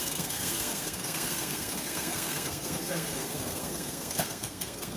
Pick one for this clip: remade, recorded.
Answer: remade